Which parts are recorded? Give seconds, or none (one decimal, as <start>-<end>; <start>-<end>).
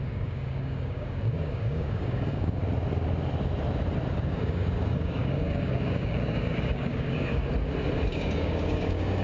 2.6-4.1; 7.4-8.1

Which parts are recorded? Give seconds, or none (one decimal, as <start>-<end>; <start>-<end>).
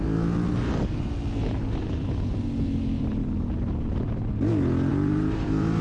0.0-4.9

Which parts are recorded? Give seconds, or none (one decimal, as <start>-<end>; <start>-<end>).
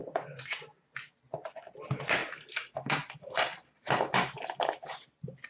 0.6-5.5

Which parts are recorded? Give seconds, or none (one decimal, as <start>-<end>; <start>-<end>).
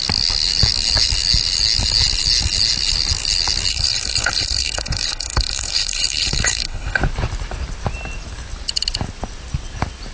0.0-3.7; 7.0-10.1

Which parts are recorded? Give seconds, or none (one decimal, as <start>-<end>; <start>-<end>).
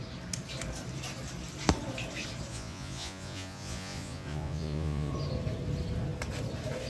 0.0-2.5; 5.1-6.9